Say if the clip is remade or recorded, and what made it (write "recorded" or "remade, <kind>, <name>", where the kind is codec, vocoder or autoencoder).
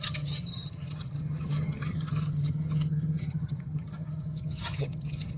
remade, vocoder, HiFi-GAN